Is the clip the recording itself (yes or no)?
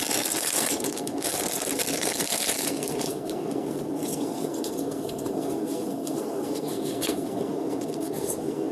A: no